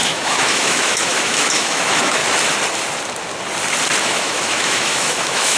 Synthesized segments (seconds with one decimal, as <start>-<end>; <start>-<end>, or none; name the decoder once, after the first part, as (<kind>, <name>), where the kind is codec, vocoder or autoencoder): 0.0-2.2 (autoencoder, DAC-VAE); 4.0-5.6

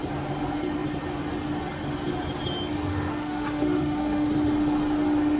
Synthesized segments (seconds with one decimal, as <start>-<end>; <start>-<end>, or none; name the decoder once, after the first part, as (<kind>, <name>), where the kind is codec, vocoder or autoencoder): 2.9-4.3 (autoencoder, DAC-VAE)

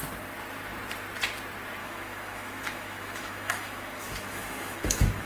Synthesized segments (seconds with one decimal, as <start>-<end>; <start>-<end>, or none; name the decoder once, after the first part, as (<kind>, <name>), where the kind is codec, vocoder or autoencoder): 1.8-5.3 (autoencoder, DAC-VAE)

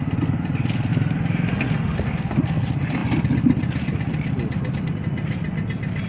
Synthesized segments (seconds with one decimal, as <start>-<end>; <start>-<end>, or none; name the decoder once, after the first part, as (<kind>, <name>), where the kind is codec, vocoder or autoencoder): none

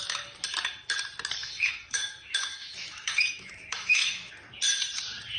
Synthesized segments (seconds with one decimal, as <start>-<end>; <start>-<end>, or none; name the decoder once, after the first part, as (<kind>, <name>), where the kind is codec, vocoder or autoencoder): 1.4-4.3 (autoencoder, DAC-VAE)

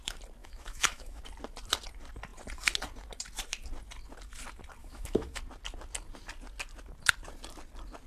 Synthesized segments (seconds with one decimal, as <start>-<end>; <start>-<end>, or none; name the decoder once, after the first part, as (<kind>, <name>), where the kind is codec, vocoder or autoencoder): 0.4-1.2 (autoencoder, DAC-VAE); 4.8-5.4